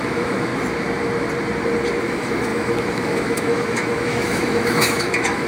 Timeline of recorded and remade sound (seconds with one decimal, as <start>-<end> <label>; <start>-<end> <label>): 0.0-0.5 remade; 0.5-2.0 recorded; 2.0-5.5 remade